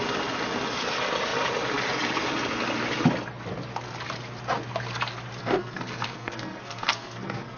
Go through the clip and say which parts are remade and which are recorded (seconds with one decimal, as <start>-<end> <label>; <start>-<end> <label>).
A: 0.0-5.4 recorded; 5.4-7.6 remade